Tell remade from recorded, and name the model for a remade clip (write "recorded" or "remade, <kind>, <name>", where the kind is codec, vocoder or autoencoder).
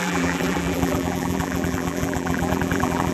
remade, vocoder, BigVGAN v2